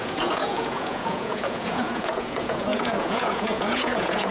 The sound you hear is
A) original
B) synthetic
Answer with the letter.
B